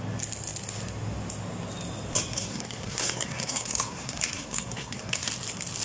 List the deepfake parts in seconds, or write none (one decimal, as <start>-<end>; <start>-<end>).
2.3-5.3